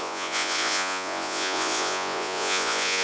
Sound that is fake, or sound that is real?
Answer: fake